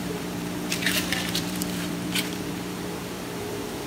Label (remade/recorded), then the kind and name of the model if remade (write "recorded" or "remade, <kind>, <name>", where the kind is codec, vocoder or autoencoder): remade, vocoder, BigVGAN v2